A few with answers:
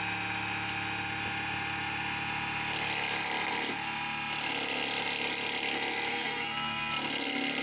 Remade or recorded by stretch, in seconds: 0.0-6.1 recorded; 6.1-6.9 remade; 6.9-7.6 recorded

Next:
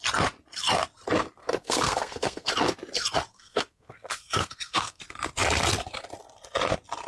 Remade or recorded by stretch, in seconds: 0.0-1.4 recorded; 1.4-2.5 remade; 2.5-3.3 recorded; 3.3-5.0 remade; 5.0-7.1 recorded

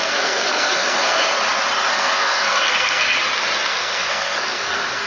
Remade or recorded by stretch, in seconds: 0.0-1.3 remade; 1.3-1.9 recorded; 1.9-3.2 remade; 3.2-3.7 recorded; 3.7-5.1 remade

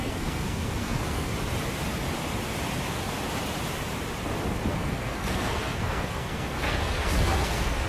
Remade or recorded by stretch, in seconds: 0.0-1.3 remade; 1.3-4.7 recorded; 4.7-7.9 remade